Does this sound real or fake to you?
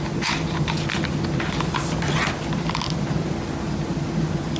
real